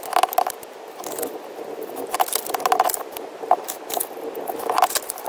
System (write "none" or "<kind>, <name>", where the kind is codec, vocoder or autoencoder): none